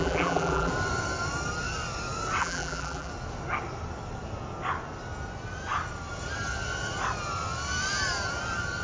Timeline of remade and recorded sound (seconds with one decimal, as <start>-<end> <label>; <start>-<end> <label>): 0.0-0.7 remade; 0.7-2.4 recorded; 2.4-3.1 remade; 3.1-8.8 recorded